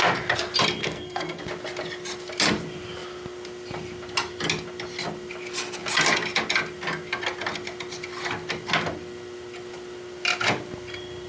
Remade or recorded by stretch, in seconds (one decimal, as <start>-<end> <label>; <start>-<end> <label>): 0.0-0.8 recorded; 0.8-1.4 remade; 1.4-11.3 recorded